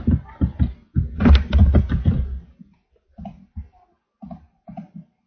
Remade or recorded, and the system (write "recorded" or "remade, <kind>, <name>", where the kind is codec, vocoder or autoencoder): recorded